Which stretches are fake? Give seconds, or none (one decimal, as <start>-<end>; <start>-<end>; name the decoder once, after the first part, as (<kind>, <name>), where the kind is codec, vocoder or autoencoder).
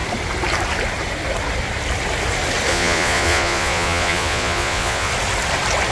2.7-5.1 (vocoder, Vocos)